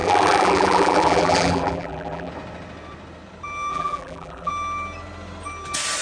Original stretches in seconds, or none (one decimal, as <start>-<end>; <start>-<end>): 2.3-3.7; 4.5-6.0